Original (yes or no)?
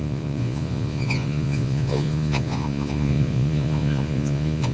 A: no